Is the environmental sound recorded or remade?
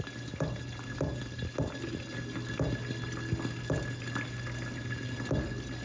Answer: recorded